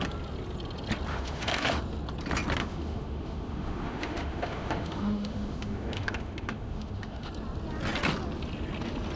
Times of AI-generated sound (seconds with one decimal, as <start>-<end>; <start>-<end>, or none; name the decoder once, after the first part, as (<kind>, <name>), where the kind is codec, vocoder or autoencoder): 1.1-1.8 (autoencoder, DAC-VAE); 2.6-7.3